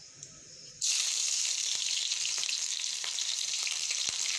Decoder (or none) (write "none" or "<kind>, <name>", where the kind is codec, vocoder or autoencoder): vocoder, BigVGAN v2